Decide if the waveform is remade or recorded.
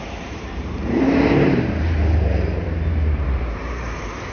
remade